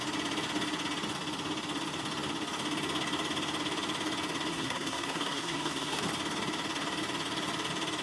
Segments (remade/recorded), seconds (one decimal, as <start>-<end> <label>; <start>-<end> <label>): 0.0-4.5 recorded; 4.5-6.0 remade; 6.0-8.0 recorded